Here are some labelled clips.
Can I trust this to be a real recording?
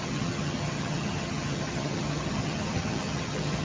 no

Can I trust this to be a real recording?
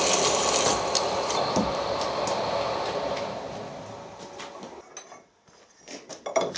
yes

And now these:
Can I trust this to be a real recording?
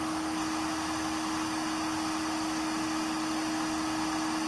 yes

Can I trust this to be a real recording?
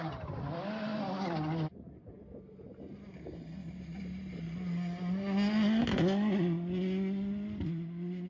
yes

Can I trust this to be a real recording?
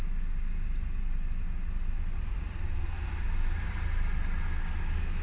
yes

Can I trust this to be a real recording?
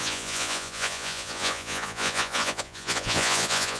no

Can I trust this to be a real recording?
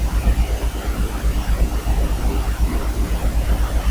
yes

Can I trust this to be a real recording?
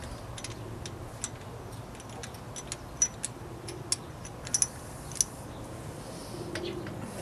yes